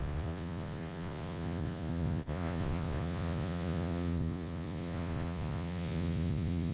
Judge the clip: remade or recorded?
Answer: remade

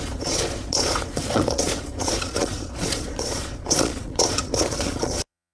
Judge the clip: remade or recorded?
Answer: remade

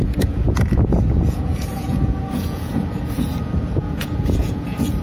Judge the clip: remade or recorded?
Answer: remade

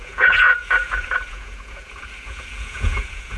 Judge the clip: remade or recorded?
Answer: remade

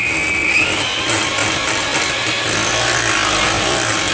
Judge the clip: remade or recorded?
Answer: recorded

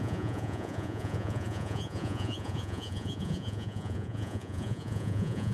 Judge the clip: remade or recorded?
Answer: remade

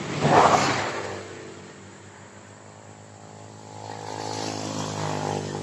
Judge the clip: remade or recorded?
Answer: recorded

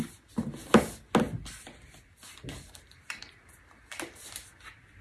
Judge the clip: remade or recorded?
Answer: recorded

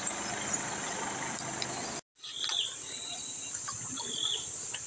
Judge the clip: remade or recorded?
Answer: recorded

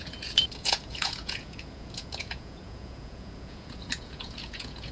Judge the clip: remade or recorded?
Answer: remade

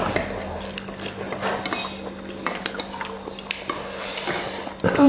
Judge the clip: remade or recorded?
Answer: recorded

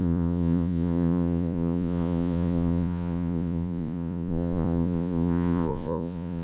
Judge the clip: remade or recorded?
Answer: remade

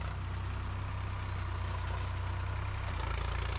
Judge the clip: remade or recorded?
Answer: recorded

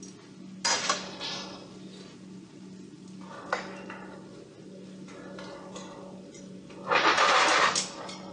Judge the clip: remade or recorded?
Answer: recorded